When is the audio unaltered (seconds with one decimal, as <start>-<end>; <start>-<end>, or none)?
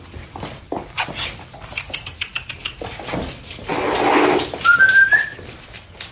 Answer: 0.0-6.1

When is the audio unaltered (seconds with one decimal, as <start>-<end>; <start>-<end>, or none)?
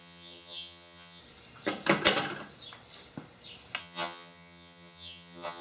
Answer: 1.2-3.8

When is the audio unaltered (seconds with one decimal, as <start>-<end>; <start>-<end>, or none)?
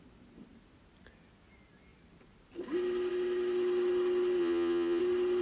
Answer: 0.0-4.4; 5.0-5.4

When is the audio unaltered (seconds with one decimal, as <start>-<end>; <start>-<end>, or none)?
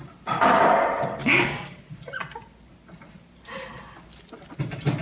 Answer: 0.0-1.2; 1.8-5.0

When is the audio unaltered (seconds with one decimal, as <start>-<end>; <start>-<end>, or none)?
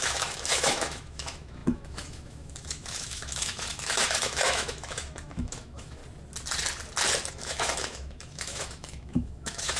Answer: 6.0-7.3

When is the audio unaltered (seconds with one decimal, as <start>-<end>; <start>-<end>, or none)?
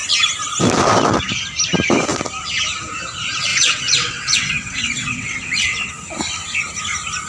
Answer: 0.0-3.5; 5.9-7.3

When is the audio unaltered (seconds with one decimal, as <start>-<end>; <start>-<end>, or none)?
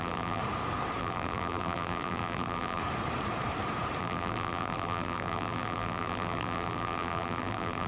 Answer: 0.4-1.0; 2.8-4.0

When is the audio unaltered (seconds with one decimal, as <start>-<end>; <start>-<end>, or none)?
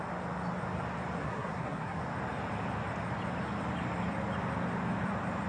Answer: 0.0-1.2; 2.0-5.5